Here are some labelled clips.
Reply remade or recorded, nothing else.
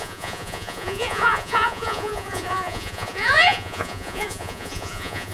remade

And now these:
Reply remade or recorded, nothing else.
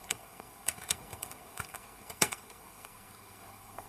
remade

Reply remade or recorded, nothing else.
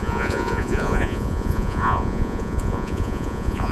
remade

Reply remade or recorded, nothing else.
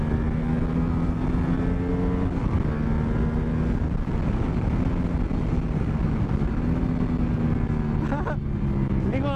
recorded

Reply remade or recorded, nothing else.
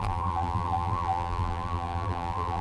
remade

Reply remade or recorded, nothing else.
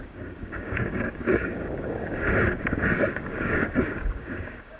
remade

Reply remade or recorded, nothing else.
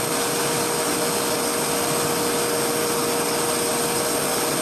recorded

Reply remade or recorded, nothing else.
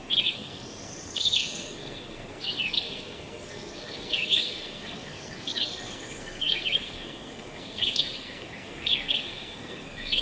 remade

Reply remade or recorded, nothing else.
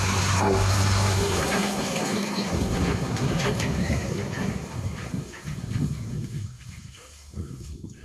remade